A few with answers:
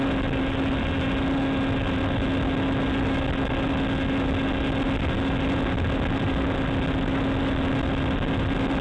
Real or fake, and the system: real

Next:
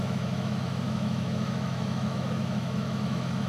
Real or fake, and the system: fake, autoencoder, DAC-VAE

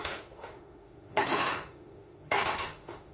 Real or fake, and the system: fake, autoencoder, DAC-VAE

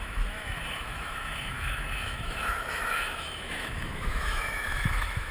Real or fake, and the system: fake, autoencoder, DAC-VAE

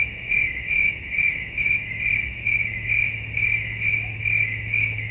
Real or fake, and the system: fake, autoencoder, DAC-VAE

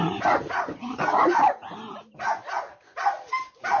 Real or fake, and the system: real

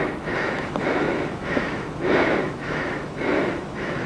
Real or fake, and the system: fake, autoencoder, DAC-VAE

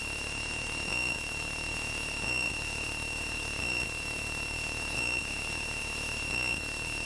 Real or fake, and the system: fake, autoencoder, DAC-VAE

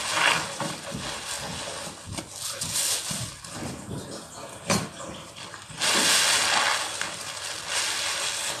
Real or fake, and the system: real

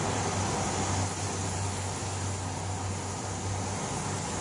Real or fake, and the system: real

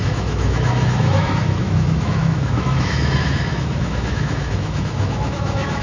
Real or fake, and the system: fake, autoencoder, DAC-VAE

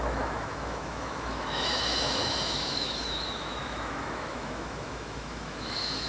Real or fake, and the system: fake, autoencoder, DAC-VAE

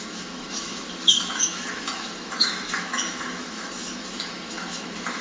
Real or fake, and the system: fake, autoencoder, DAC-VAE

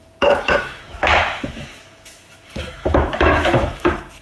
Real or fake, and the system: fake, autoencoder, DAC-VAE